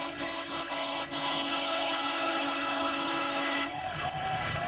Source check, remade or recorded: remade